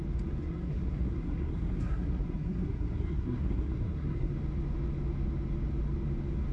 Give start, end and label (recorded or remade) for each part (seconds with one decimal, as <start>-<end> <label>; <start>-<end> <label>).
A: 0.0-0.4 recorded; 0.4-4.3 remade; 4.3-6.5 recorded

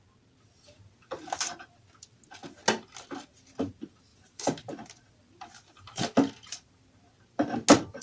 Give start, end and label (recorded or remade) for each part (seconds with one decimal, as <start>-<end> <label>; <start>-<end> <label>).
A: 0.0-8.0 recorded

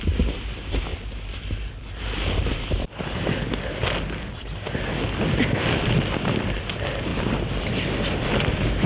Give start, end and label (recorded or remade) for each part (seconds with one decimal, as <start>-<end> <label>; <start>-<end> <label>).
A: 0.0-8.9 recorded

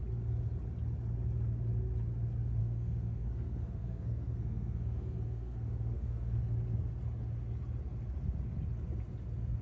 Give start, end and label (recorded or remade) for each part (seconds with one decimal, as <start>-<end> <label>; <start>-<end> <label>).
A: 0.0-2.6 recorded; 2.6-6.4 remade; 6.4-9.6 recorded

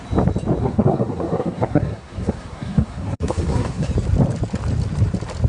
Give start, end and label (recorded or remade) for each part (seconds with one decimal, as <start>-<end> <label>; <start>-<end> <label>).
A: 0.0-0.6 recorded; 0.6-3.9 remade; 3.9-5.5 recorded

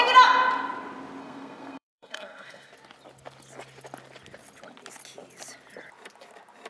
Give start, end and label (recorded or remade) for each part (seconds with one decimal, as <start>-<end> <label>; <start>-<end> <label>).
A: 0.0-1.2 recorded; 1.2-2.7 remade; 2.7-6.7 recorded